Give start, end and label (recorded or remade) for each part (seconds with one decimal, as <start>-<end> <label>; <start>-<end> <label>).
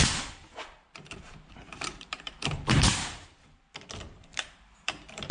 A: 0.0-0.4 recorded; 0.4-3.6 remade; 3.6-4.3 recorded; 4.3-5.3 remade